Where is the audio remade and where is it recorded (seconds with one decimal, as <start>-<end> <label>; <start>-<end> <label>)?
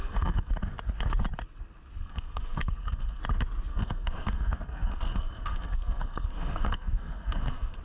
0.0-0.5 remade; 0.5-2.0 recorded; 2.0-3.2 remade; 3.2-3.7 recorded; 3.7-7.8 remade